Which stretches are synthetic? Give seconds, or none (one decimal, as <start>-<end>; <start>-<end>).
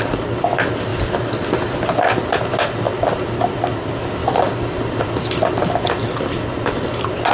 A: none